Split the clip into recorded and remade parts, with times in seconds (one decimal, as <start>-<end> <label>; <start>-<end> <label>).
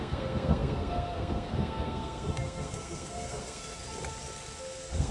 0.0-3.8 remade; 3.8-4.6 recorded; 4.6-5.1 remade